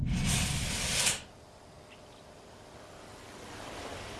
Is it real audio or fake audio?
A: real